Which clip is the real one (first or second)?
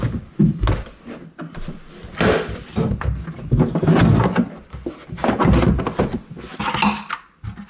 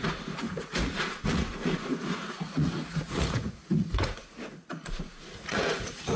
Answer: first